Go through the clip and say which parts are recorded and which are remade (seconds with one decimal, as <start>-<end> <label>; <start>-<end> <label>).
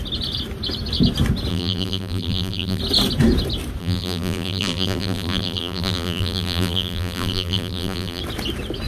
0.0-1.5 recorded; 1.5-2.8 remade; 2.8-3.8 recorded; 3.8-8.2 remade; 8.2-8.9 recorded